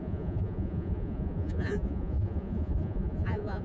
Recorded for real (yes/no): no